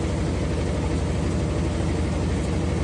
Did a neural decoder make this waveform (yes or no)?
no